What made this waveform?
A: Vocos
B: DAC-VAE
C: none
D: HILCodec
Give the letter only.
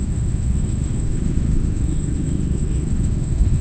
B